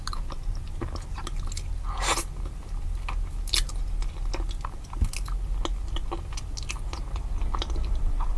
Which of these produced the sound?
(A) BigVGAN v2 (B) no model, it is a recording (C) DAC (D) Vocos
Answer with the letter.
B